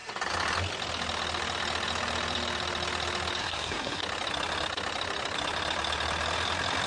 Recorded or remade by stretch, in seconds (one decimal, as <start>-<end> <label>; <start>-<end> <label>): 0.0-3.4 recorded; 3.4-4.0 remade; 4.0-6.9 recorded